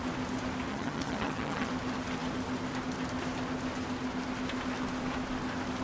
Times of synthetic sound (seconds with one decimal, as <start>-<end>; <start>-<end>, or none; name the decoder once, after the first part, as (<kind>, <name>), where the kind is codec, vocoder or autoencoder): 0.7-1.7 (vocoder, HiFi-GAN)